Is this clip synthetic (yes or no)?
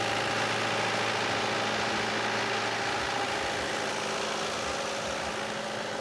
no